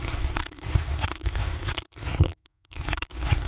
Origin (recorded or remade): remade